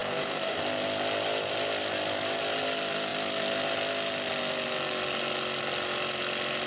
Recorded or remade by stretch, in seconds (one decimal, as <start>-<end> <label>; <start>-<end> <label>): 0.0-0.6 remade; 0.6-6.7 recorded